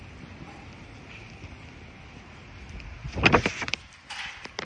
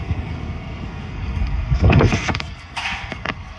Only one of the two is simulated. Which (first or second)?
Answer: second